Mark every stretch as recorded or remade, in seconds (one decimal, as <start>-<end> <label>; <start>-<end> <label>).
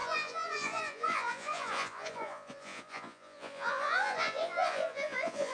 0.0-5.5 remade